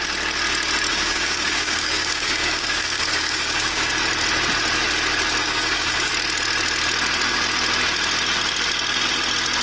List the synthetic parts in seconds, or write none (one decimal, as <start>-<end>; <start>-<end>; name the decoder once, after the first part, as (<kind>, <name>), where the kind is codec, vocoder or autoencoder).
0.9-3.9 (codec, DAC); 5.4-6.1